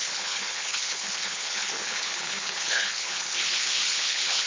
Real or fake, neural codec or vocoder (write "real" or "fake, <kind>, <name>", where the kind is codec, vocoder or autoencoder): fake, codec, HILCodec